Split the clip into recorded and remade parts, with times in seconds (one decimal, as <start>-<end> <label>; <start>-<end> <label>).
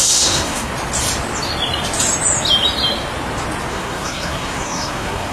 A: 0.0-0.7 remade; 0.7-3.7 recorded; 3.7-5.3 remade